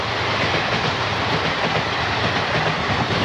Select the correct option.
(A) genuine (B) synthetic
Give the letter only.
B